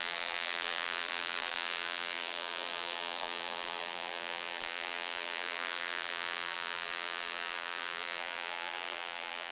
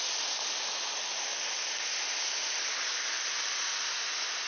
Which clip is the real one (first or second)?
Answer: second